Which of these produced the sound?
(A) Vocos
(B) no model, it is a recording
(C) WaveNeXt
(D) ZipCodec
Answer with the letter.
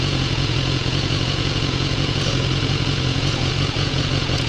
A